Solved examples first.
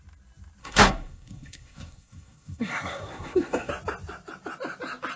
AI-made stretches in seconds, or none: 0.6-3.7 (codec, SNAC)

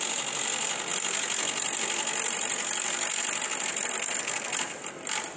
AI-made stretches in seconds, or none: none

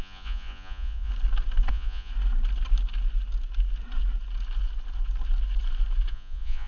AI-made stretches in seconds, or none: 0.0-1.1 (vocoder, Vocos); 1.7-2.1; 6.1-6.7

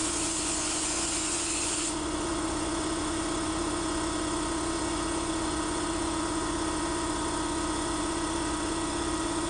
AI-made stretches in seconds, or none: 0.0-9.5 (vocoder, Vocos)